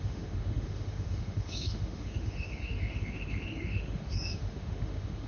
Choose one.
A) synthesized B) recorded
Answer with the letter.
A